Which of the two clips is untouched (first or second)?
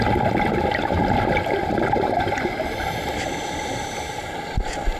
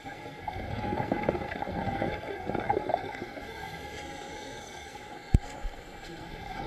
first